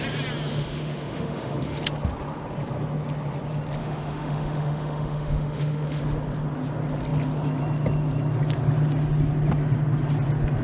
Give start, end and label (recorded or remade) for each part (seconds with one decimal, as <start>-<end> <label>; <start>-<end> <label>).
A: 0.0-0.5 recorded; 0.5-1.8 remade; 1.8-3.8 recorded; 3.8-6.0 remade; 6.0-10.6 recorded